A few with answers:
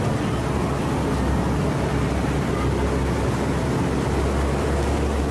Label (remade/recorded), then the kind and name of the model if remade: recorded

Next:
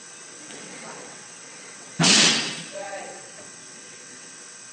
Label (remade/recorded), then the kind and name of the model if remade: remade, vocoder, WaveNeXt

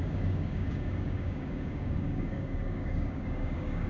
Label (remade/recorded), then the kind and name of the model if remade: remade, codec, DAC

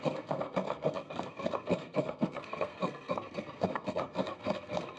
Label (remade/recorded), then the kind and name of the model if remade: remade, codec, SNAC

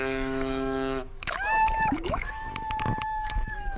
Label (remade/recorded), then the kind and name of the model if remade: remade, autoencoder, DAC-VAE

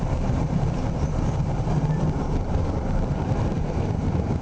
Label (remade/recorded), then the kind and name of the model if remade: remade, vocoder, BigVGAN v2